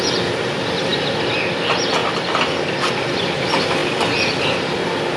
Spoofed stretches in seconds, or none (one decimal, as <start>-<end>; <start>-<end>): none